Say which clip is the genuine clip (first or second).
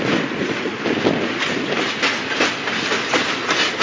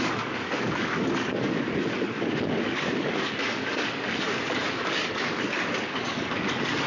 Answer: first